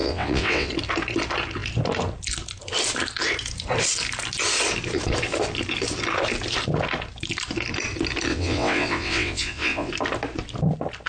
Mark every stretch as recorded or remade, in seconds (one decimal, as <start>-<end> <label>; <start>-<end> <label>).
0.0-0.7 remade; 0.7-8.3 recorded; 8.3-9.9 remade; 9.9-11.1 recorded